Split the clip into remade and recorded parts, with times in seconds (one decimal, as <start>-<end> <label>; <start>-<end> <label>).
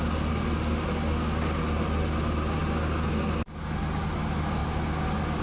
0.0-5.4 recorded